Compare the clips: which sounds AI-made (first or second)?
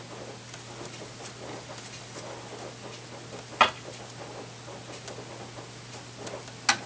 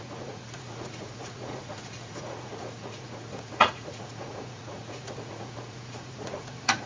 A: second